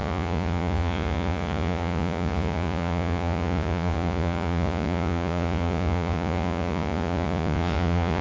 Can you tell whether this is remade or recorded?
remade